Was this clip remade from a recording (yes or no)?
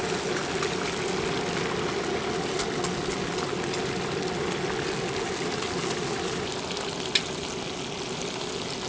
no